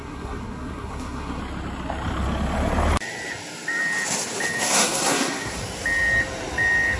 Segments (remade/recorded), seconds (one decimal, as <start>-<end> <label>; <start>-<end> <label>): 0.0-1.4 remade; 1.4-4.6 recorded; 4.6-5.6 remade; 5.6-7.0 recorded